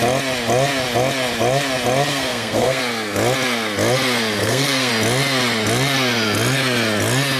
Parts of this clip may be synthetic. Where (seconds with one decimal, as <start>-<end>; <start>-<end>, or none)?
2.1-2.8; 4.4-4.9